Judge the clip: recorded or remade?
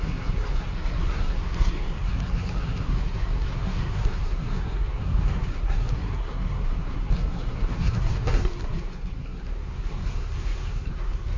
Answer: remade